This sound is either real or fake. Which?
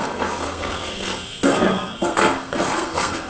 fake